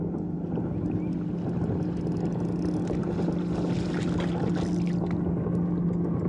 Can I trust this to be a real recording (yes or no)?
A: yes